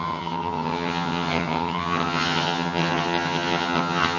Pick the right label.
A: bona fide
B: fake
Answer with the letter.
B